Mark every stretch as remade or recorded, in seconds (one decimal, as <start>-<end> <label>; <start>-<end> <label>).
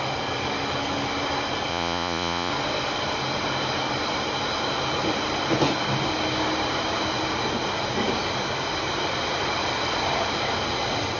0.0-1.7 recorded; 1.7-2.5 remade; 2.5-11.2 recorded